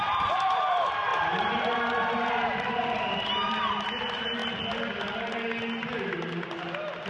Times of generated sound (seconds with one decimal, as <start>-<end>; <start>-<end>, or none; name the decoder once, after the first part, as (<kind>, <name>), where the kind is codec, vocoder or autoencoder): 0.0-4.4 (vocoder, BigVGAN v2)